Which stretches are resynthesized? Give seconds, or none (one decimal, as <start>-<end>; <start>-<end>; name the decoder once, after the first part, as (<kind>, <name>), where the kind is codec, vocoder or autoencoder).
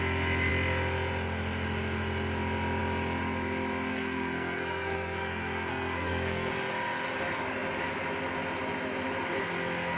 3.9-6.5 (codec, SNAC)